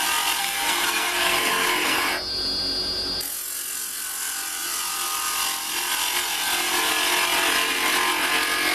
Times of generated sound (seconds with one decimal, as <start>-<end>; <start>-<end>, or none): 0.4-2.0